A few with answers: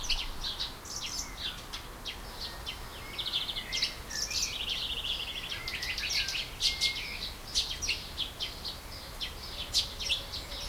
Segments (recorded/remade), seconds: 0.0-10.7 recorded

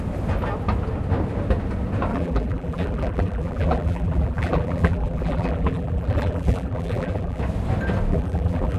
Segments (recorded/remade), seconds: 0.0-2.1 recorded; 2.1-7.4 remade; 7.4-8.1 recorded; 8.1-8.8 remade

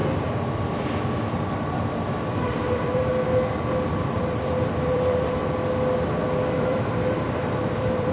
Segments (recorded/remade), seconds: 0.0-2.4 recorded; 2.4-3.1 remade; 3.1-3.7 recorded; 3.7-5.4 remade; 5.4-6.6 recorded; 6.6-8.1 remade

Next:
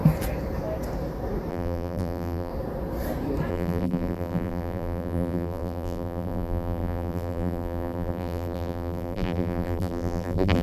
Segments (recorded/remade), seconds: 0.0-1.5 recorded; 1.5-2.5 remade; 2.5-3.5 recorded; 3.5-10.6 remade

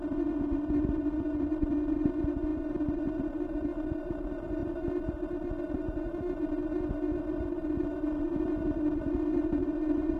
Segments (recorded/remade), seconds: 0.0-10.2 remade